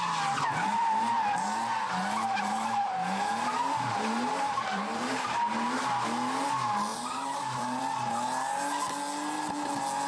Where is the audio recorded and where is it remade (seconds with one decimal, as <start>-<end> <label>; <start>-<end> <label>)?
0.0-2.0 recorded; 2.0-5.8 remade; 5.8-6.9 recorded; 6.9-7.8 remade; 7.8-10.1 recorded